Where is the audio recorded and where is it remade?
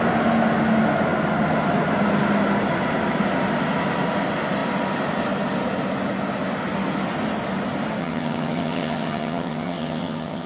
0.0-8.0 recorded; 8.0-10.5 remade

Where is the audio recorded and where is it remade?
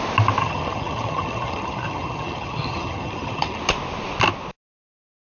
0.0-0.4 recorded; 0.4-3.6 remade; 3.6-5.3 recorded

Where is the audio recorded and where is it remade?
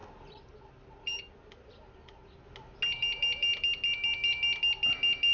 0.0-5.3 recorded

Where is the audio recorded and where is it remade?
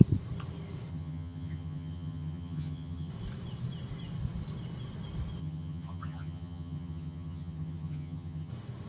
0.0-0.9 recorded; 0.9-3.1 remade; 3.1-5.4 recorded; 5.4-8.5 remade; 8.5-8.9 recorded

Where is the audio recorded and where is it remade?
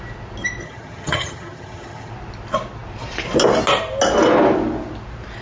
0.0-0.6 recorded; 0.6-2.1 remade; 2.1-5.4 recorded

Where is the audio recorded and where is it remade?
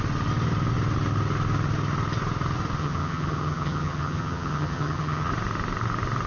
0.0-2.8 recorded; 2.8-5.3 remade; 5.3-6.3 recorded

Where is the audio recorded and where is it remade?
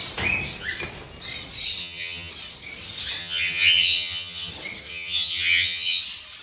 0.0-1.8 recorded; 1.8-2.3 remade; 2.3-3.2 recorded; 3.2-4.5 remade; 4.5-4.9 recorded; 4.9-6.0 remade; 6.0-6.4 recorded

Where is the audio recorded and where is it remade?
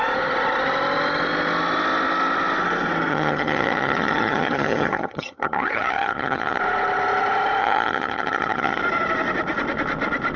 0.0-3.1 recorded; 3.1-6.6 remade; 6.6-7.6 recorded; 7.6-8.8 remade; 8.8-10.4 recorded